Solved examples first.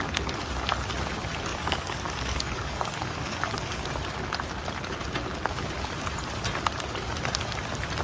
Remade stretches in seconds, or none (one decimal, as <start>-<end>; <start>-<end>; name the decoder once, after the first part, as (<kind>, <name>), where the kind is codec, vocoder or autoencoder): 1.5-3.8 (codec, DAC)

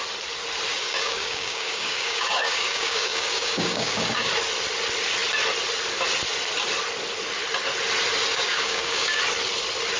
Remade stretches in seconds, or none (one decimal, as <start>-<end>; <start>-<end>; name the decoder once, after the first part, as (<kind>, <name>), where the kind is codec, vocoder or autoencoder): 0.7-4.3 (codec, DAC); 8.3-9.2

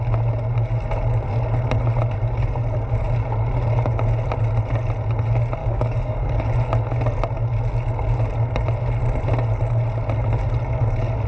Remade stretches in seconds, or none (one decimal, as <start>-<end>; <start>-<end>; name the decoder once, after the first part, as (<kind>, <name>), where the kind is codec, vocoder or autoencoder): 5.6-6.3 (codec, DAC)

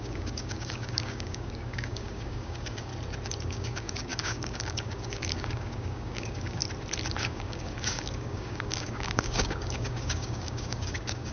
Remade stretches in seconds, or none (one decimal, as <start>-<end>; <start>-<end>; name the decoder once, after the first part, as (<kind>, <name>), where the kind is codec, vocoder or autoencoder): 0.0-2.9 (codec, DAC); 3.4-6.6; 7.2-11.3